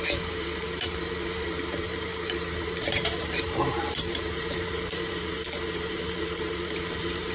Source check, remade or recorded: remade